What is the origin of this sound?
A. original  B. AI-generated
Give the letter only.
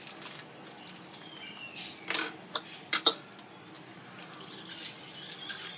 A